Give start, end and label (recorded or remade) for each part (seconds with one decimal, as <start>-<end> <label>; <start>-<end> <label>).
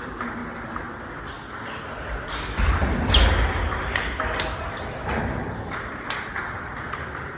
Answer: 0.0-7.4 recorded